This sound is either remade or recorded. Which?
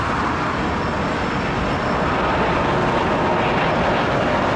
recorded